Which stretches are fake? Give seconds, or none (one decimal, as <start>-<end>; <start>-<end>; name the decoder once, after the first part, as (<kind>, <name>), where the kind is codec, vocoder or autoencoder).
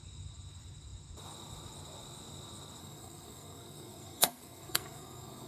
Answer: 2.8-5.5 (codec, SNAC)